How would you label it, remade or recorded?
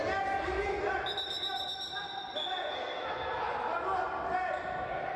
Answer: recorded